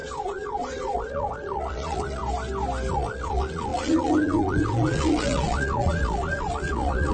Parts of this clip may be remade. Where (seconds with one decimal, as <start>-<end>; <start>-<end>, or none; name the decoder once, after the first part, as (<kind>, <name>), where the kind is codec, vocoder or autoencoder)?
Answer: 0.0-2.2 (vocoder, Vocos); 2.9-7.1